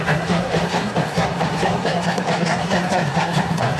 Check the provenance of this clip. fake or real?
fake